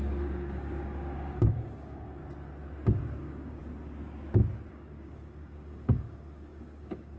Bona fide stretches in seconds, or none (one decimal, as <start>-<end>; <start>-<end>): 2.2-3.2; 3.6-4.7